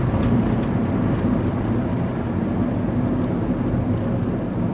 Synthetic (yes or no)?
no